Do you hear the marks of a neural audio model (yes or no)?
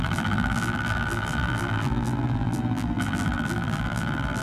yes